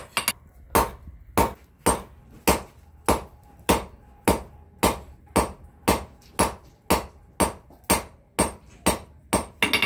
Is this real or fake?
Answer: real